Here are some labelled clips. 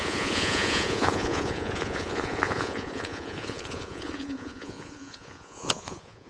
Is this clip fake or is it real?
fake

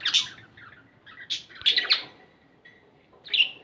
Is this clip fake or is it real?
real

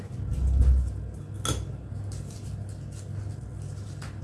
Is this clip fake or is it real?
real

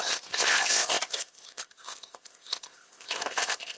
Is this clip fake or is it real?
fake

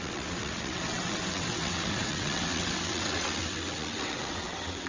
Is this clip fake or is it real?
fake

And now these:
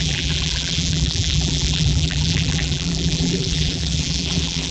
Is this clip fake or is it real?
fake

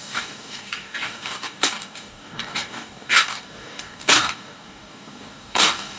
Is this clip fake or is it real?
fake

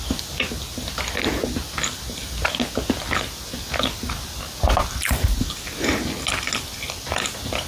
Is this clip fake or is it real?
real